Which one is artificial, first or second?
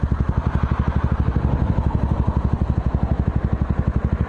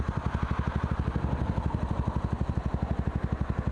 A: second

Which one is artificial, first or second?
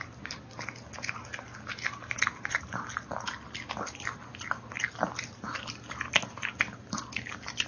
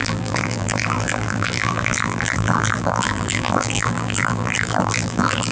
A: second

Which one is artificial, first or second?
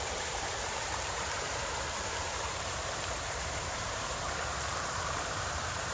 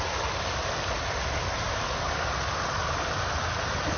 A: first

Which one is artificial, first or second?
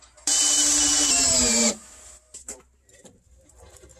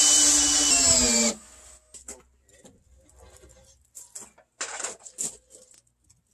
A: first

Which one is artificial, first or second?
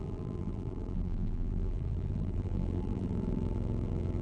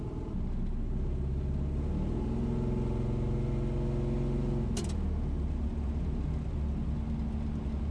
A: first